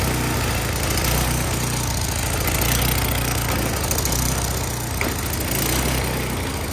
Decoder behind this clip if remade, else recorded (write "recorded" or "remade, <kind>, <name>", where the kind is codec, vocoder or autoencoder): recorded